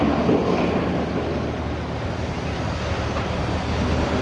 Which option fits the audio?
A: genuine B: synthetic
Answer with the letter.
A